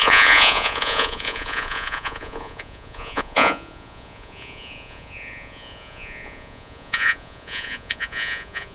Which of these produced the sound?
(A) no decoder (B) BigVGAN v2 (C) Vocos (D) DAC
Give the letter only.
C